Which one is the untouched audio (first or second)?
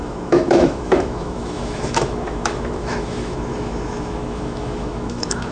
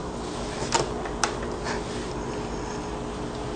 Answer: second